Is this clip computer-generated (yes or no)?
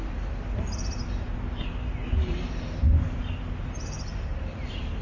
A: no